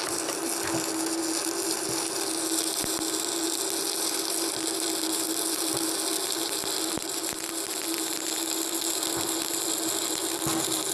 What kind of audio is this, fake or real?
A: real